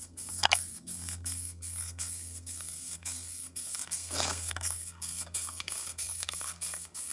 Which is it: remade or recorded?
remade